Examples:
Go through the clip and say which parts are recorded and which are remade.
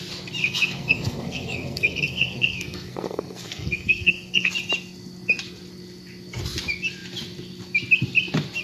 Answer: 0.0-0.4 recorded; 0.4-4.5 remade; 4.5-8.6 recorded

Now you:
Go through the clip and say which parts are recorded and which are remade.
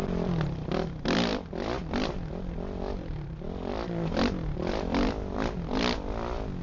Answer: 0.0-6.6 recorded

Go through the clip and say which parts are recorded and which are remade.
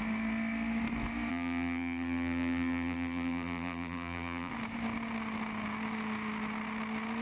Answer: 0.0-1.3 recorded; 1.3-4.5 remade; 4.5-7.2 recorded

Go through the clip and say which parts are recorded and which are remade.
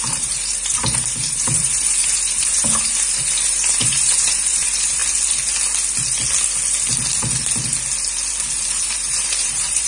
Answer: 0.0-5.0 remade; 5.0-8.5 recorded; 8.5-9.9 remade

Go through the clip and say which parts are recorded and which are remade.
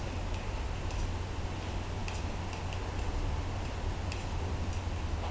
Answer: 0.0-5.3 recorded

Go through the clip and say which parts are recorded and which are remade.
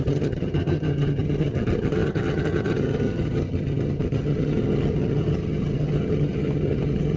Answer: 0.0-7.2 remade